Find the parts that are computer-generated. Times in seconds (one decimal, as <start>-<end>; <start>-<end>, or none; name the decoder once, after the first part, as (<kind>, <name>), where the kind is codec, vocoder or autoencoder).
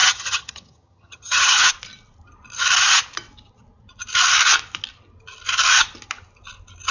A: 0.0-1.7 (vocoder, HiFi-GAN)